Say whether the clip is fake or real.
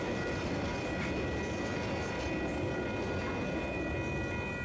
real